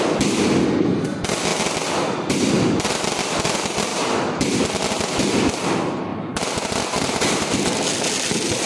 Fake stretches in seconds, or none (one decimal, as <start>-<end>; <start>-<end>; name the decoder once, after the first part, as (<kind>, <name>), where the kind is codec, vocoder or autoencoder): none